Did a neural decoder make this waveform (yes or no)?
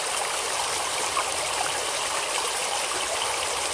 no